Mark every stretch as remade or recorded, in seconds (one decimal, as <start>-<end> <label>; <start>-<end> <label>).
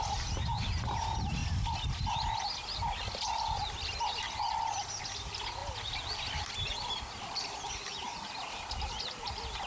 0.0-9.7 recorded